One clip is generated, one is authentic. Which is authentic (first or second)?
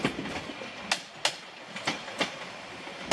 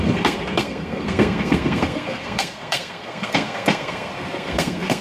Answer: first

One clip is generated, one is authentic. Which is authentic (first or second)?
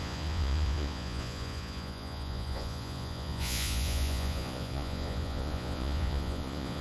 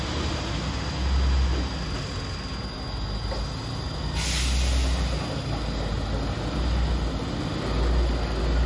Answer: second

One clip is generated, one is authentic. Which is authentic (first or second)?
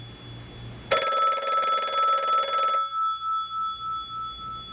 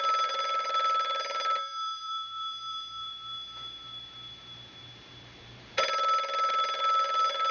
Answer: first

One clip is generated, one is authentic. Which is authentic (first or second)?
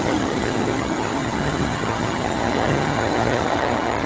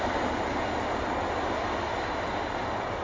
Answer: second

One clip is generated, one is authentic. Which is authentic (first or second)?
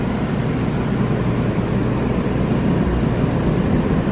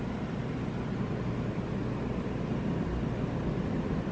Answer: first